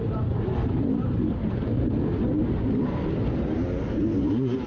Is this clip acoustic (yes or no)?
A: no